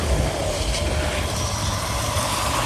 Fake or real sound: real